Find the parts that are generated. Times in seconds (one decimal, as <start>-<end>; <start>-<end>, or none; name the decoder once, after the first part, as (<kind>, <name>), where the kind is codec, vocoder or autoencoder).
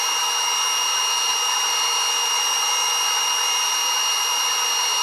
none